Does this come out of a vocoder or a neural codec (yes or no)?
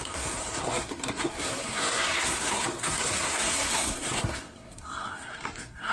yes